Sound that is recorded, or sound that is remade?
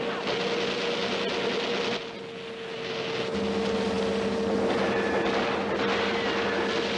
recorded